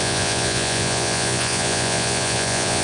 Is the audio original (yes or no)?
no